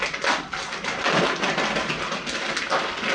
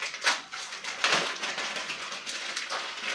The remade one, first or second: second